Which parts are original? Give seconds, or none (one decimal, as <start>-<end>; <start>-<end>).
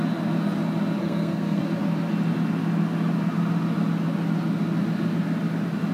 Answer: 0.0-1.0; 1.6-5.9